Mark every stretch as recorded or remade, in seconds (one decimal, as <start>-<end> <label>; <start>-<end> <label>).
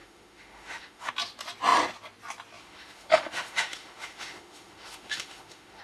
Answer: 0.0-1.1 remade; 1.1-2.6 recorded; 2.6-5.8 remade